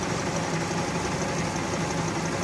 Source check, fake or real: real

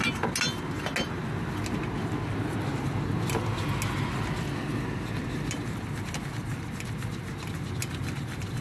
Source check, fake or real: real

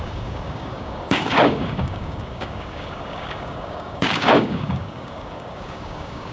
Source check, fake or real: fake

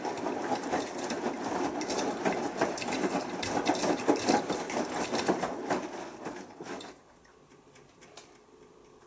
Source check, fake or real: fake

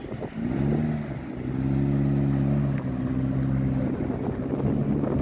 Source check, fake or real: real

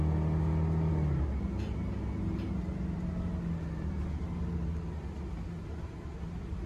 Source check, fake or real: real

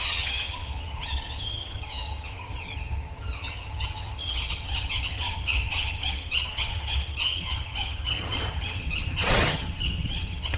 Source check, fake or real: fake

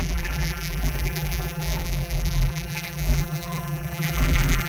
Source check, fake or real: fake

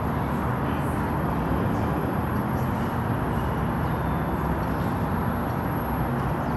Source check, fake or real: real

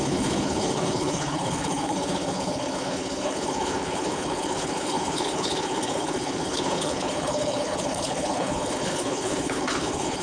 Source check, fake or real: fake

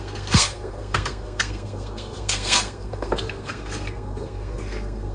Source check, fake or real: fake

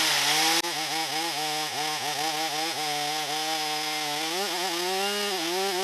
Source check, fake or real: real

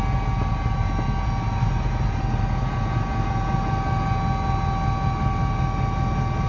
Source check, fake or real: real